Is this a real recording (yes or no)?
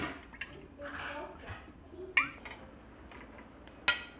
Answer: yes